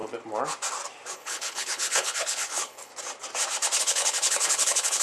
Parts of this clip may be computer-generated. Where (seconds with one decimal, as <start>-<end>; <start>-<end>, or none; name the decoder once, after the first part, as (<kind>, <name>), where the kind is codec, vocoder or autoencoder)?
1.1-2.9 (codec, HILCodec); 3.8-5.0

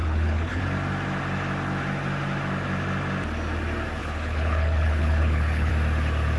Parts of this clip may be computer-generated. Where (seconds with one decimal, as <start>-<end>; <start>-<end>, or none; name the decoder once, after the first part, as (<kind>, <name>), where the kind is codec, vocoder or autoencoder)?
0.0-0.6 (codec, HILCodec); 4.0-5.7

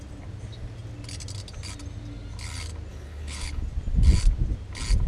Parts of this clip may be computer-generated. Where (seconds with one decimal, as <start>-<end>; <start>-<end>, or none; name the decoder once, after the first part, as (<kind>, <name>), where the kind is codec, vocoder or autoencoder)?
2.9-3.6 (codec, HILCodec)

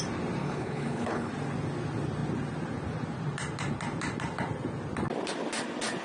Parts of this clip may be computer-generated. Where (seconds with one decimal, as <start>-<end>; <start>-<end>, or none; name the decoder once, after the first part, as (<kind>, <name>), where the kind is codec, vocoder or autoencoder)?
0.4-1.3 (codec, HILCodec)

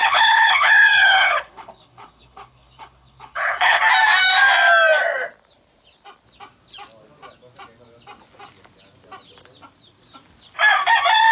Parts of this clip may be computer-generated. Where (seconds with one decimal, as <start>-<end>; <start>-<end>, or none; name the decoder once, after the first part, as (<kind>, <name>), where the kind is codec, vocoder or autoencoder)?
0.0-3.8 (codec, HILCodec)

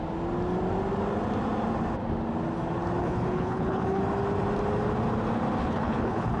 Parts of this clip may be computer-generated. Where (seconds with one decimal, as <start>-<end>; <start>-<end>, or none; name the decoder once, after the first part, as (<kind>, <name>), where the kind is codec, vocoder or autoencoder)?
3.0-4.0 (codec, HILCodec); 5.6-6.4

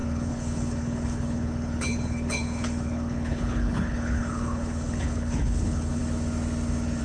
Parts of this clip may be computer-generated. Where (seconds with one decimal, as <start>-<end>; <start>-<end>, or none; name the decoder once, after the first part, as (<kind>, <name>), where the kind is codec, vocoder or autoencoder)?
0.0-6.0 (codec, HILCodec)